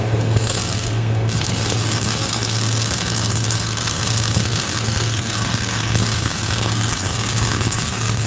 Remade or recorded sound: remade